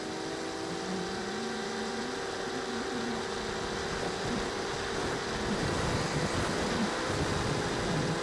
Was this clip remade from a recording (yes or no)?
no